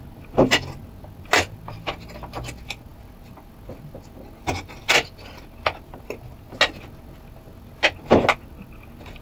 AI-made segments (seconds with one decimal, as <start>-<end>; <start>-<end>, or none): none